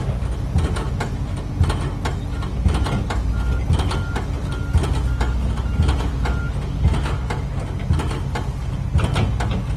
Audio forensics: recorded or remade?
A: recorded